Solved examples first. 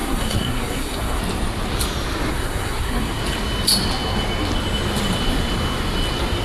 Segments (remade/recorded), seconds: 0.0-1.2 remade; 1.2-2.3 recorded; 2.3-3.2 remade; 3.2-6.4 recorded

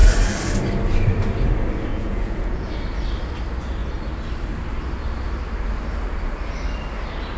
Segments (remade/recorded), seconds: 0.0-1.9 recorded; 1.9-2.7 remade; 2.7-7.4 recorded

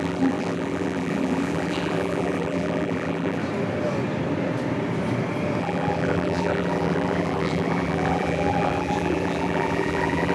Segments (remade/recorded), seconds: 0.0-3.4 remade; 3.4-5.6 recorded; 5.6-10.3 remade